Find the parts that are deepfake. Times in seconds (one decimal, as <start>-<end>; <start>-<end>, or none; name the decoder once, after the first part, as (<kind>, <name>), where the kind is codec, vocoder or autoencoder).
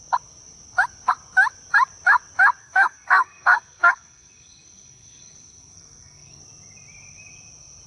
2.6-6.4 (codec, SNAC)